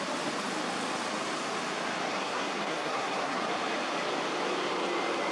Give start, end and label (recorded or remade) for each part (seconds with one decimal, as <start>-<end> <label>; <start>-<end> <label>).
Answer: 0.0-2.1 recorded; 2.1-3.4 remade; 3.4-5.3 recorded